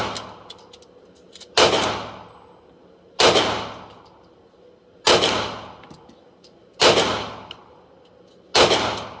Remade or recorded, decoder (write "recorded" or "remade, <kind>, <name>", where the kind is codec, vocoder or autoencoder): recorded